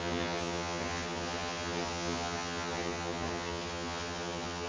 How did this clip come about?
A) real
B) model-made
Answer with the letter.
B